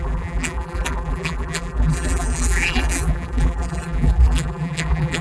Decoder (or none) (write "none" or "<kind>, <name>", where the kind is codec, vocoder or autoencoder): vocoder, BigVGAN v2